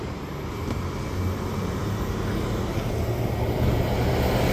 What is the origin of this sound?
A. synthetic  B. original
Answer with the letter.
B